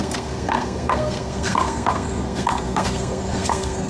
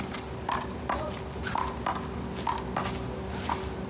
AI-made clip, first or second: first